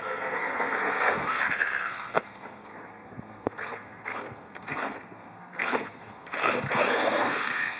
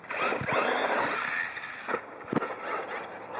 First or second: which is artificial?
first